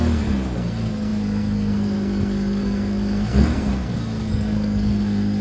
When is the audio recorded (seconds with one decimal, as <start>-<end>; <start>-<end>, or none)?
none